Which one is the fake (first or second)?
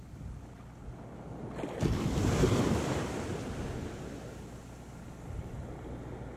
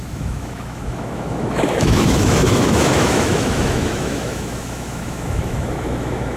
second